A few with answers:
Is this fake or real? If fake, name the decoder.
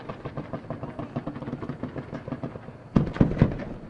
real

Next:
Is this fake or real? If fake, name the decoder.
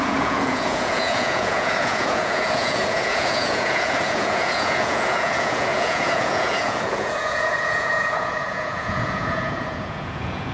fake, vocoder, Vocos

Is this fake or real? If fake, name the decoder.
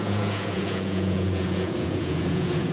fake, vocoder, Vocos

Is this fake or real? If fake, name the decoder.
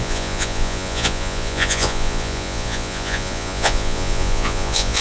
fake, vocoder, Vocos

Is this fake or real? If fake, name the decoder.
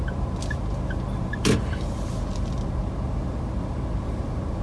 real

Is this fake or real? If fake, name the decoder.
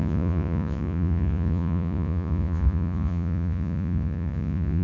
fake, vocoder, Vocos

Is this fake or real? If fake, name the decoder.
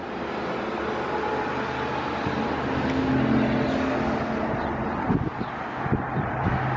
real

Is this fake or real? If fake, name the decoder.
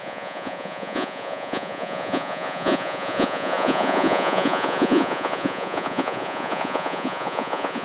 fake, vocoder, Vocos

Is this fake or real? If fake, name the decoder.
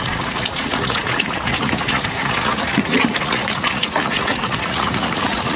fake, vocoder, Vocos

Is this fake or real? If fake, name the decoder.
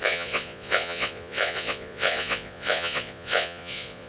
fake, vocoder, Vocos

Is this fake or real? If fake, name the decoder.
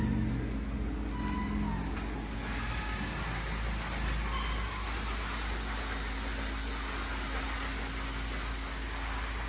real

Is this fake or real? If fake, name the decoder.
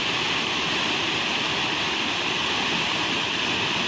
real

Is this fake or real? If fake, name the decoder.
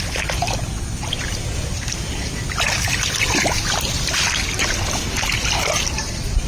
real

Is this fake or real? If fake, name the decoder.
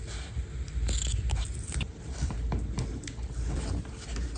real